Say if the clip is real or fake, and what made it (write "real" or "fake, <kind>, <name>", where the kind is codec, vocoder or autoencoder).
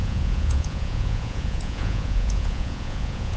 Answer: fake, vocoder, Vocos